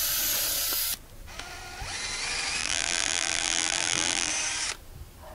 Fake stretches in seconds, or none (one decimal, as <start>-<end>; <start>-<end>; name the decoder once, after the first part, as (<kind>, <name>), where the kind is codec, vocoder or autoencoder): 2.6-4.3 (vocoder, BigVGAN v2)